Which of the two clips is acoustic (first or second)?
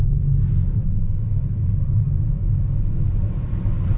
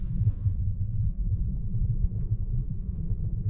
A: first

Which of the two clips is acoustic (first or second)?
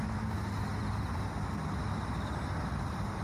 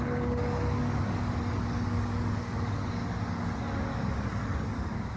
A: first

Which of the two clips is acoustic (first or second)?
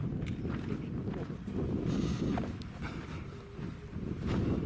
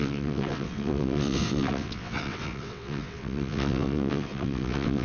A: first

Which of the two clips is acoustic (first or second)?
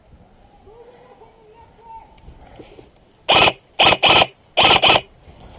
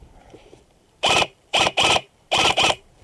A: first